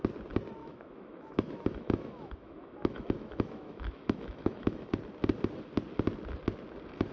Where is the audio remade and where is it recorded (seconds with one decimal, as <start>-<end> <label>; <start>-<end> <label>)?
0.0-0.6 recorded; 0.6-4.9 remade; 4.9-7.1 recorded